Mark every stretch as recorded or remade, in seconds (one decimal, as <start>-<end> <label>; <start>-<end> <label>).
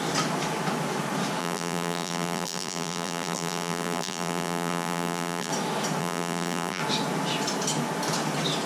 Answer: 0.0-1.4 recorded; 1.4-5.5 remade; 5.5-6.0 recorded; 6.0-6.8 remade; 6.8-8.7 recorded